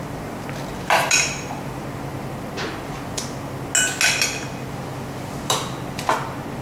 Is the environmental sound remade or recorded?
recorded